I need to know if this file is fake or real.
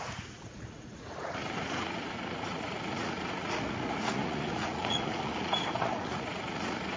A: fake